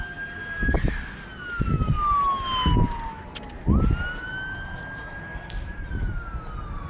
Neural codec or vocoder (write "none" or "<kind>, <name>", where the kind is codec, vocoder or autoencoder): none